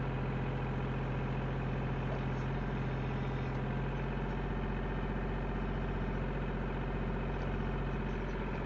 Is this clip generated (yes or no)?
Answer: no